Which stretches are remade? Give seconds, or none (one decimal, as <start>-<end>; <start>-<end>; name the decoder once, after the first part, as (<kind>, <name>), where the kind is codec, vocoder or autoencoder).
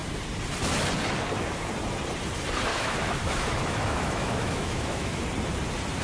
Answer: 2.7-5.2 (autoencoder, DAC-VAE)